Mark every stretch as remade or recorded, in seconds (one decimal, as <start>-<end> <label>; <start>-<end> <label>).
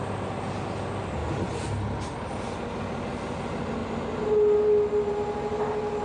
0.0-6.0 recorded